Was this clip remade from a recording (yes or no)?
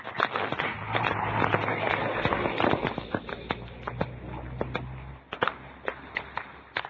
no